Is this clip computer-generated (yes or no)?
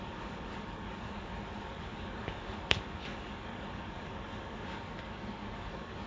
yes